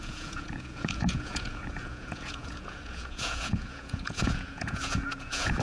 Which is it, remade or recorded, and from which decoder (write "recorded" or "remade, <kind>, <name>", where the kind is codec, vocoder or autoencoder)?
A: remade, vocoder, Vocos